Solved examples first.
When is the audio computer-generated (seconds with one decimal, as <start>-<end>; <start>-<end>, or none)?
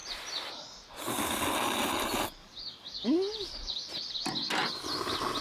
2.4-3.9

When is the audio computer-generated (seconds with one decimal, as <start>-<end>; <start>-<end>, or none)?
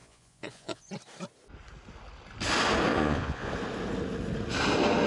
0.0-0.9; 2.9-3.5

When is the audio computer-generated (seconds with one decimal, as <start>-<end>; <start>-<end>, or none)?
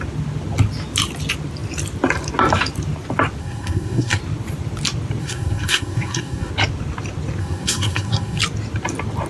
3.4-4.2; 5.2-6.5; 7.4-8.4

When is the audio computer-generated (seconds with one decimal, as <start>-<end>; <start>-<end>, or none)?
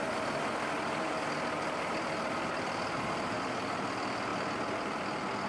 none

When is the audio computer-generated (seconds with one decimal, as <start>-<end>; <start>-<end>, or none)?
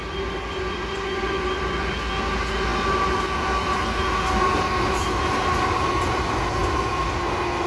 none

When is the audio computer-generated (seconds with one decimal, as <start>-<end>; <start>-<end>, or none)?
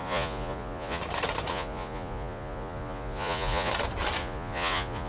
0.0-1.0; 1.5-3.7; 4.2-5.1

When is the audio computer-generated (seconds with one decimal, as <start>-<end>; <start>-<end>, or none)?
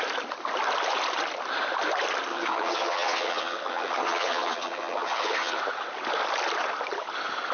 2.3-5.6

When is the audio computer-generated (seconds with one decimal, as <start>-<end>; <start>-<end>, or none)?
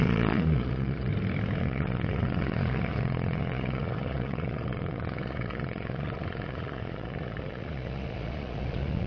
0.0-1.1; 1.6-9.1